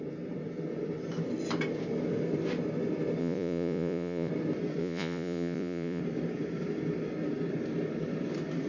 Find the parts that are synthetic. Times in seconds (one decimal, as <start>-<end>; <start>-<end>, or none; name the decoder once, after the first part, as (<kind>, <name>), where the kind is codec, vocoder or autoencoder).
3.2-4.3 (vocoder, Vocos); 4.8-6.0